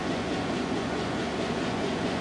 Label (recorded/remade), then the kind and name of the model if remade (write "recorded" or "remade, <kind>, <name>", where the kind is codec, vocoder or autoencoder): remade, vocoder, Vocos